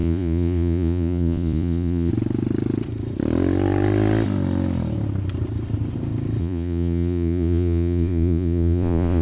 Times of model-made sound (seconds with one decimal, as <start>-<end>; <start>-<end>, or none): 0.0-2.1; 6.4-9.2